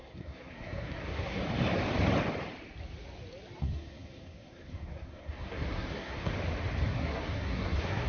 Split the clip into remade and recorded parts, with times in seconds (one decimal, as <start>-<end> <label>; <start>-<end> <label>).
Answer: 0.0-1.4 remade; 1.4-3.6 recorded; 3.6-6.3 remade; 6.3-6.9 recorded; 6.9-8.1 remade